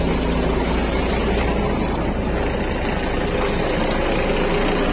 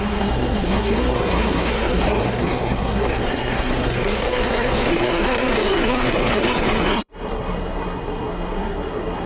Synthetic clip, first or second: second